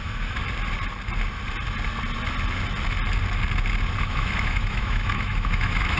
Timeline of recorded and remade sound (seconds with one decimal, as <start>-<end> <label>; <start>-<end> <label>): 0.0-0.4 remade; 0.4-4.0 recorded; 4.0-6.0 remade

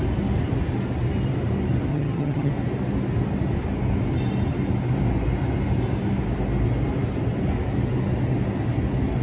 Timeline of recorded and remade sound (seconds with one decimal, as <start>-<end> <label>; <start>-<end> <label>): 0.0-1.9 recorded; 1.9-2.5 remade; 2.5-9.2 recorded

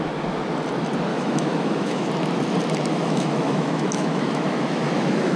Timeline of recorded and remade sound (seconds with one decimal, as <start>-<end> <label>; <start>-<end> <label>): 0.0-1.1 recorded; 1.1-2.1 remade; 2.1-2.9 recorded; 2.9-5.4 remade

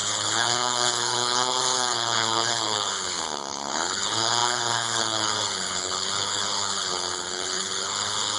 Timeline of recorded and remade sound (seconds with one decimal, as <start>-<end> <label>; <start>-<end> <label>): 0.0-8.4 remade

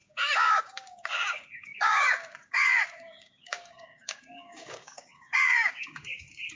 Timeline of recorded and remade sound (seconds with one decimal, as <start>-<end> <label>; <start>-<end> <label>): 0.0-6.6 remade

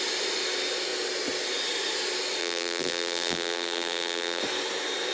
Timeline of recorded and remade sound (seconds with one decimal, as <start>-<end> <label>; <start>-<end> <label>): 0.0-2.4 recorded; 2.4-4.4 remade; 4.4-5.1 recorded

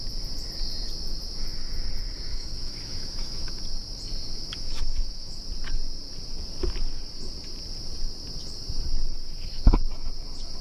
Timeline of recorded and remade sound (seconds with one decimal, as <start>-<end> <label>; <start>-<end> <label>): 0.0-2.3 recorded; 2.3-3.5 remade; 3.5-4.4 recorded; 4.4-5.4 remade; 5.4-10.6 recorded